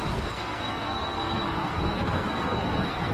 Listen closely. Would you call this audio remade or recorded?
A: remade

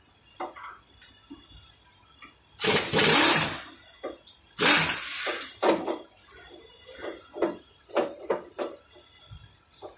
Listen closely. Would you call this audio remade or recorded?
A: recorded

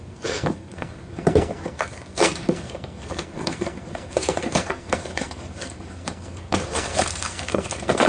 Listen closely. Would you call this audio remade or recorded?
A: remade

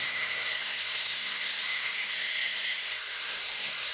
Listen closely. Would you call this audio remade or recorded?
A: remade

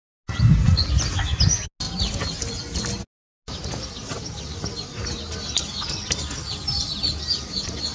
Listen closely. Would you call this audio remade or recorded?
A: recorded